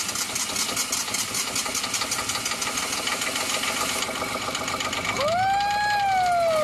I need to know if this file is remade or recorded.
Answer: recorded